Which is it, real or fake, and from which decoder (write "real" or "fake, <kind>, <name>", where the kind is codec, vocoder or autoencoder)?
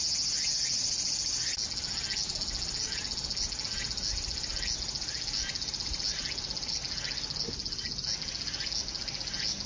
real